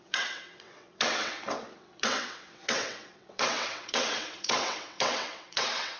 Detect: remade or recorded remade